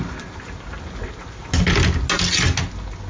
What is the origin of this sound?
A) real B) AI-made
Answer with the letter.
A